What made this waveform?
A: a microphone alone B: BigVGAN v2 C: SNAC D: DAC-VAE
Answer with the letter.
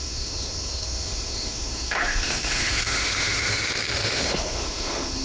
D